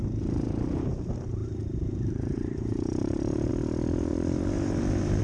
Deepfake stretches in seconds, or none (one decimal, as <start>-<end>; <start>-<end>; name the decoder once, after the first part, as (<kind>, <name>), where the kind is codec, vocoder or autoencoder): 1.4-3.5 (vocoder, BigVGAN v2); 4.1-5.2